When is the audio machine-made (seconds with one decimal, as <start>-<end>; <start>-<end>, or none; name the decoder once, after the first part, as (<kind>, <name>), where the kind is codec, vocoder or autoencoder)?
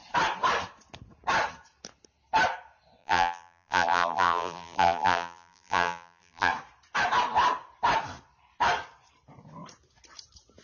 3.0-6.5 (vocoder, BigVGAN v2)